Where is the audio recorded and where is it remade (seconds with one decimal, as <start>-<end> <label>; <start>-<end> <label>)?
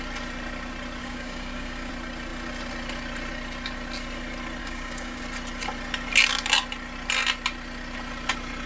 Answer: 0.0-1.0 recorded; 1.0-1.9 remade; 1.9-4.6 recorded; 4.6-5.2 remade; 5.2-8.7 recorded